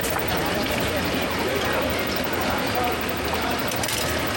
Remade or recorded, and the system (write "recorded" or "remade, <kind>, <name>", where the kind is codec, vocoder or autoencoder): recorded